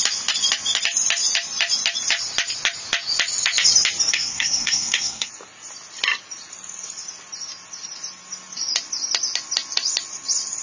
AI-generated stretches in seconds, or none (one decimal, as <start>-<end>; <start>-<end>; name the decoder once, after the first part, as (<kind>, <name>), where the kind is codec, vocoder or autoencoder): 4.1-5.3 (codec, SNAC)